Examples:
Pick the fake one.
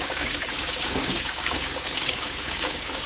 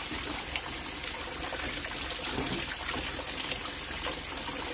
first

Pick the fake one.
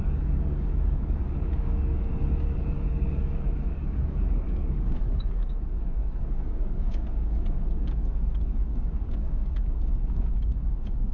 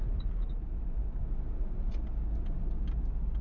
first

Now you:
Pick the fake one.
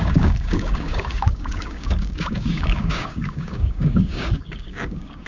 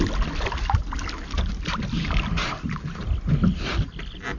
first